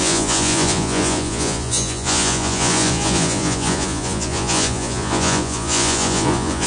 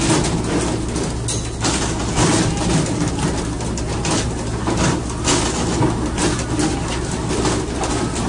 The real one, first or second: second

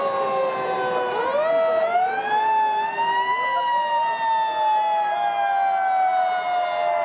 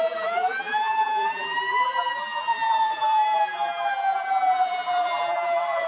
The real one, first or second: first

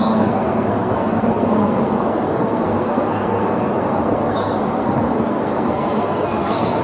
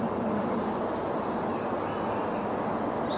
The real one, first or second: second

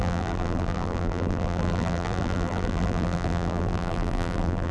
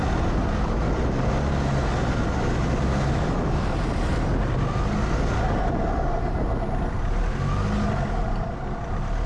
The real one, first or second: second